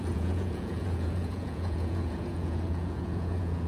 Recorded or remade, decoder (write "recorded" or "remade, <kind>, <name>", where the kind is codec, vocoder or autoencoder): remade, vocoder, Vocos